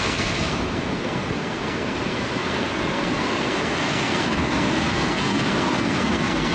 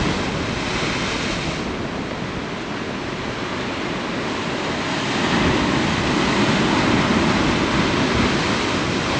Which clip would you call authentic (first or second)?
second